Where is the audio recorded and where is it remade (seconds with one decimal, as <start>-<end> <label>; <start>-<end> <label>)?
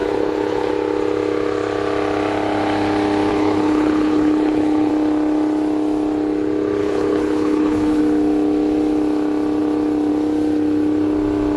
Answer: 0.0-0.7 remade; 0.7-3.3 recorded; 3.3-4.9 remade; 4.9-6.8 recorded; 6.8-8.0 remade; 8.0-11.6 recorded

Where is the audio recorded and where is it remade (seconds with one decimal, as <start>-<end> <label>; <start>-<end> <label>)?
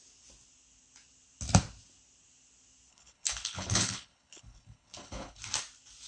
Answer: 0.0-2.9 recorded; 2.9-5.4 remade; 5.4-6.1 recorded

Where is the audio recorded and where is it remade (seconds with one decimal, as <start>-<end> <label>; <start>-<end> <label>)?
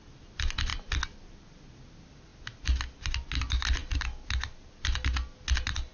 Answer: 0.0-5.9 recorded